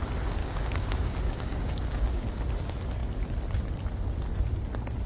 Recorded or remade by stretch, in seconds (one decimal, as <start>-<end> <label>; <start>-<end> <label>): 0.0-0.4 recorded; 0.4-2.4 remade; 2.4-5.1 recorded